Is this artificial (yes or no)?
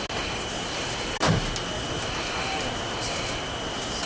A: no